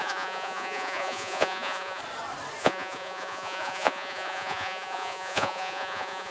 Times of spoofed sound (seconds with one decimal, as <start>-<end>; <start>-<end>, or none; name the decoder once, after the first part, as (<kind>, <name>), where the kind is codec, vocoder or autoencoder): 0.0-2.0 (vocoder, Vocos); 2.6-6.3